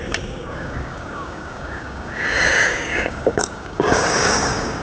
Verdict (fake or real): fake